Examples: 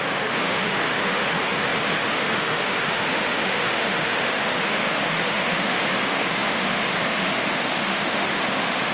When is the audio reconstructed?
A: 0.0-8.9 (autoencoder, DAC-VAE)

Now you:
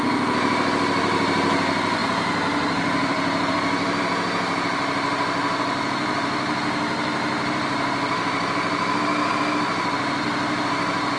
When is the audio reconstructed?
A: 5.4-10.0 (vocoder, BigVGAN v2)

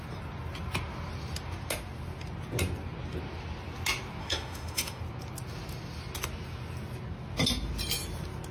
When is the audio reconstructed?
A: 4.2-5.0 (autoencoder, DAC-VAE)

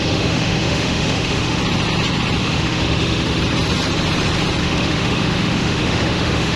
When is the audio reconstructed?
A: 0.0-1.6 (autoencoder, DAC-VAE); 2.4-3.4; 4.6-6.6

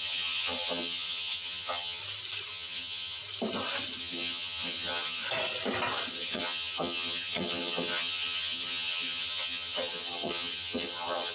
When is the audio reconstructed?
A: 0.0-2.0 (vocoder, HiFi-GAN); 2.5-3.2; 4.0-5.2; 6.1-11.3

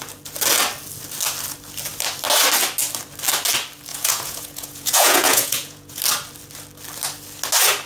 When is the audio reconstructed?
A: 3.9-6.0 (vocoder, Vocos)